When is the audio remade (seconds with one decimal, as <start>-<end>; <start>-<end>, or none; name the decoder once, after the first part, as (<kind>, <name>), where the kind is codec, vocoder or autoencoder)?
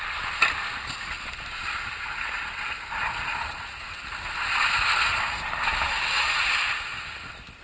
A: none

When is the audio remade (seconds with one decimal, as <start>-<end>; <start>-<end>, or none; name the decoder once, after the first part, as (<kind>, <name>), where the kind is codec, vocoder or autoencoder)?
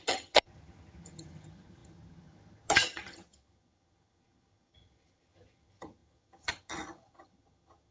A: 0.0-7.9 (vocoder, HiFi-GAN)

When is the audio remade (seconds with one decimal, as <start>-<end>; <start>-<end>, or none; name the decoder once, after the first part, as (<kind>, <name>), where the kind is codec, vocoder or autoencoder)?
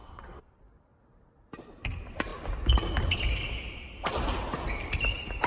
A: 0.0-0.6 (vocoder, WaveNeXt)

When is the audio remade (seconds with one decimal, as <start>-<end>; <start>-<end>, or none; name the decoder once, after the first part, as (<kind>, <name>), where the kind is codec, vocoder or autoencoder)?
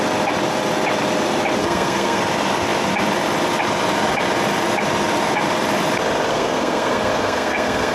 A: 1.6-2.2 (codec, SNAC); 6.3-7.9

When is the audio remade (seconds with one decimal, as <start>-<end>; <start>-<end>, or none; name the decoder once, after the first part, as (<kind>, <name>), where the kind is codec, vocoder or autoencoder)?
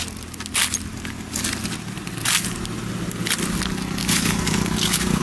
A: 4.0-5.2 (codec, DAC)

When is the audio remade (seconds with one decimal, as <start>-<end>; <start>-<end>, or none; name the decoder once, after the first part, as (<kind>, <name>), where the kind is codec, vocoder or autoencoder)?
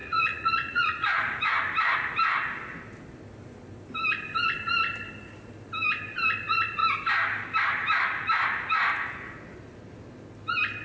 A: 0.0-1.4 (vocoder, Vocos)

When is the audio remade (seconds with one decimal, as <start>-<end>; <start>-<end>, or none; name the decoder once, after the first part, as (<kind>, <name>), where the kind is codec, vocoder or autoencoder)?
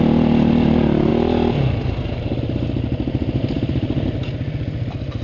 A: none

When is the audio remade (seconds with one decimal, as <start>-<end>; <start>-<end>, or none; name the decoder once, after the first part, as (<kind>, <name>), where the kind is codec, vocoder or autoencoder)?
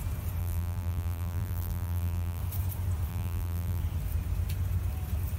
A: 0.4-2.4 (vocoder, BigVGAN v2); 3.1-3.8